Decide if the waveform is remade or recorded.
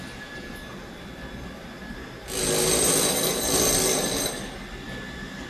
recorded